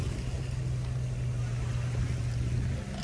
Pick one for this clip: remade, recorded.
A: recorded